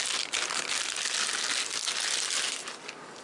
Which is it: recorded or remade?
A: recorded